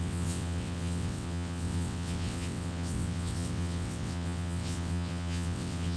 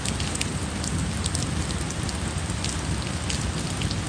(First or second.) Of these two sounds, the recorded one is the second